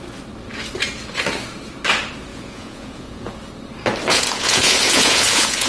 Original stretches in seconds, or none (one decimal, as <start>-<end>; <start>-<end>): 0.0-2.3; 3.3-4.1